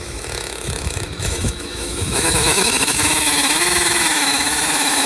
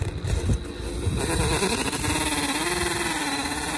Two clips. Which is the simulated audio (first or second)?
first